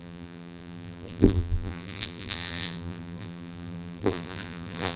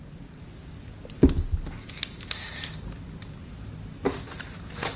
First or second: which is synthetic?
first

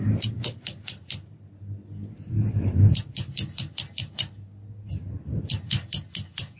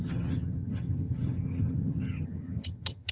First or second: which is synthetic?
second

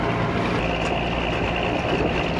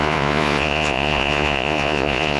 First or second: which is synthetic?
second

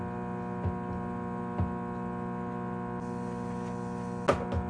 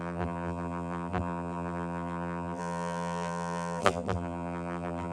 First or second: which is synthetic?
second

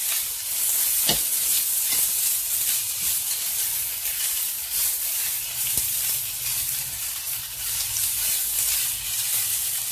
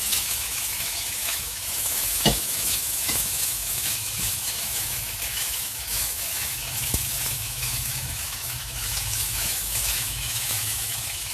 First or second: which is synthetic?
second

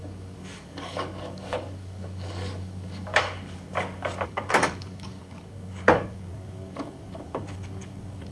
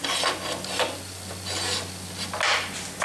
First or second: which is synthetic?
first